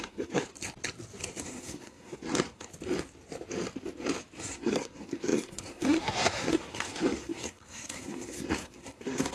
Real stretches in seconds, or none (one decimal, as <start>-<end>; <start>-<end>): 0.5-1.4; 2.7-4.4